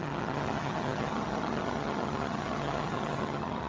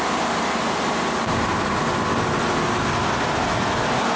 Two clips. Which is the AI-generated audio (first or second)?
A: first